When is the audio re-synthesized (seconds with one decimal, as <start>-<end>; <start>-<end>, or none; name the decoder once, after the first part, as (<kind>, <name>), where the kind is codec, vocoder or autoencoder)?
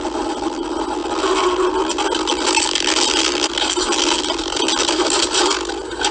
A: none